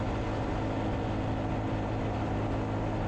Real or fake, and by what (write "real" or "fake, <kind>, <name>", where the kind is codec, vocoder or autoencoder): real